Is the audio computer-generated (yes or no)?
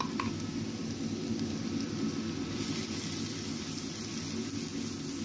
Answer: no